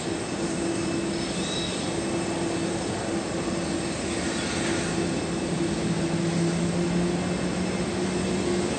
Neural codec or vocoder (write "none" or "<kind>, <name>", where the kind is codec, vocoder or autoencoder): none